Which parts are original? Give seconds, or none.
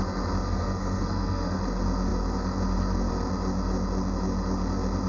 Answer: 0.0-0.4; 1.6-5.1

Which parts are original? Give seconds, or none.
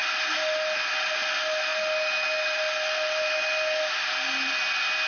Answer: 0.0-5.1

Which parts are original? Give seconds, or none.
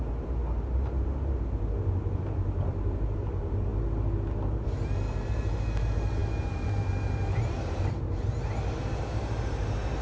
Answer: 3.7-4.5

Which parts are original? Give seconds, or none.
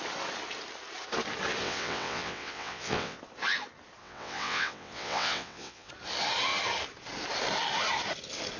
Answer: 0.0-1.6; 3.2-4.0; 5.9-8.6